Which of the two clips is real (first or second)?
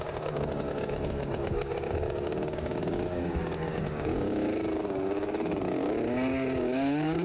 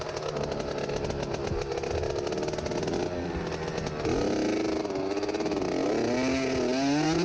second